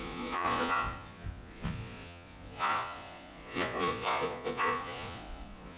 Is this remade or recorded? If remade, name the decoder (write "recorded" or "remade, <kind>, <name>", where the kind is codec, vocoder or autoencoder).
remade, vocoder, Vocos